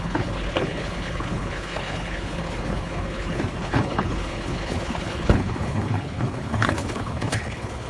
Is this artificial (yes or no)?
yes